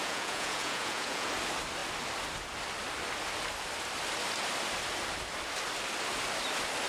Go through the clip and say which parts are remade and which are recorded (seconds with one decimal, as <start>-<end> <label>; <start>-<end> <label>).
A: 0.0-1.3 remade; 1.3-6.9 recorded